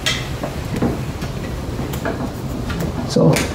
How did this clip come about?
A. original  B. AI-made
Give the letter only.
A